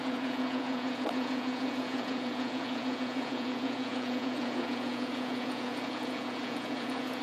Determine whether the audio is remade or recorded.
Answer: remade